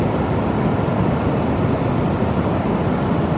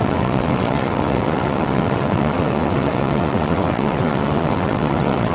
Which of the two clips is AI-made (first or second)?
second